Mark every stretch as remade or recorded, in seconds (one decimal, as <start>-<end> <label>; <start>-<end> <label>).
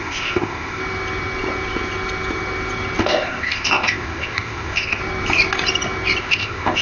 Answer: 0.0-0.8 remade; 0.8-3.0 recorded; 3.0-5.0 remade; 5.0-6.2 recorded; 6.2-6.8 remade